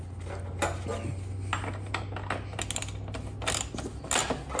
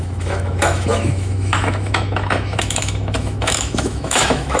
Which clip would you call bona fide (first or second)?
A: first